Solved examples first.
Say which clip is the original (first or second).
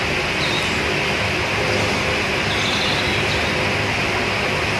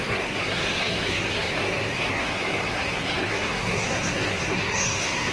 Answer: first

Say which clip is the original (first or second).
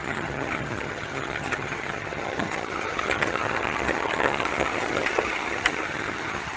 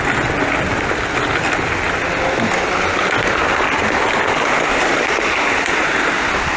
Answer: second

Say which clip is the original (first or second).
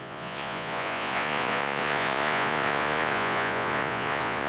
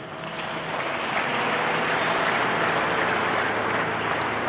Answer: second